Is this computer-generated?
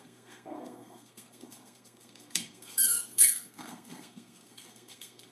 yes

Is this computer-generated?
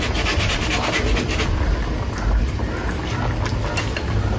no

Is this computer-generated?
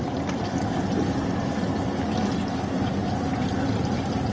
no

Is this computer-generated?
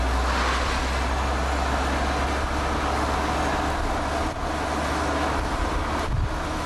no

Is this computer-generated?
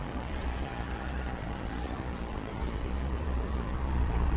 yes